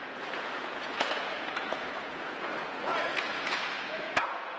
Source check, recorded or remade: remade